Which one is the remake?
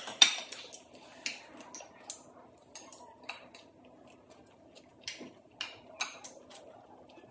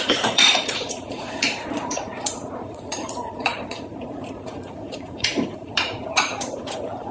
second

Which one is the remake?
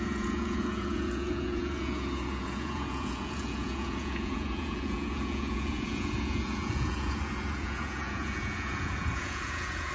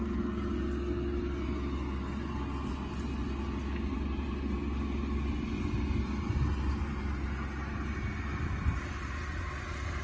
first